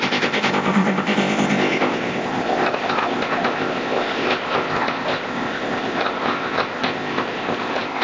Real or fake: fake